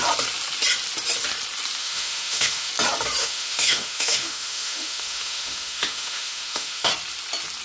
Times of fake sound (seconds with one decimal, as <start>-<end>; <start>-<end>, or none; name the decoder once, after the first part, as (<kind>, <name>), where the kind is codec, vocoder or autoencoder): 1.8-2.7 (autoencoder, DAC-VAE); 3.2-6.9

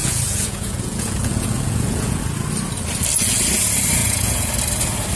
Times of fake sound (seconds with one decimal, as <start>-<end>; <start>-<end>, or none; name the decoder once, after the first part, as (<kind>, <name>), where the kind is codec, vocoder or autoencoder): 0.0-2.2 (vocoder, Vocos); 4.0-4.5

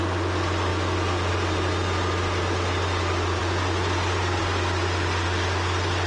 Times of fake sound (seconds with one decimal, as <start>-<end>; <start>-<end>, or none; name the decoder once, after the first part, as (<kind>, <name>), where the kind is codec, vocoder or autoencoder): none